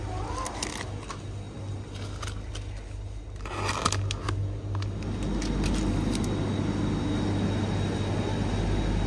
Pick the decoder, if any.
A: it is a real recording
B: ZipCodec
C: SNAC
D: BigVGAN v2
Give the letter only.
A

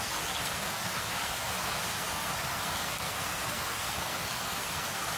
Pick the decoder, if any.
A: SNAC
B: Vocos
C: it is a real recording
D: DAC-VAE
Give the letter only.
A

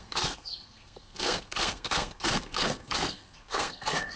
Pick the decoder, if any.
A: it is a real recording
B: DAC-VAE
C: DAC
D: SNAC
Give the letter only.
D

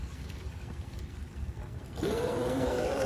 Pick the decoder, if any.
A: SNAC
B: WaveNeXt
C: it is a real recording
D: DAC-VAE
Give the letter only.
A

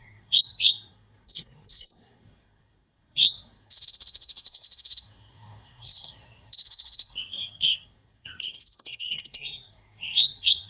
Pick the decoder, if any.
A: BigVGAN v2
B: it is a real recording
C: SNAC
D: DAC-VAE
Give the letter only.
C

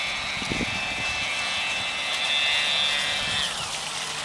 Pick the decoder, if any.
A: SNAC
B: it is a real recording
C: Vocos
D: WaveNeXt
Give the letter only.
B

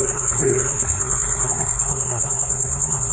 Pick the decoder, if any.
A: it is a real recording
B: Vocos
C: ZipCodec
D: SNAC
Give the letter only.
D